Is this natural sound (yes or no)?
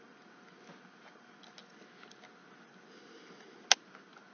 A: yes